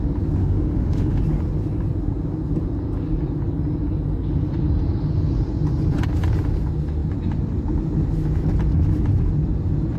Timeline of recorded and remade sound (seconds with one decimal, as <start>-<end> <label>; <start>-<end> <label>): 0.0-0.4 recorded; 0.4-1.2 remade; 1.2-10.0 recorded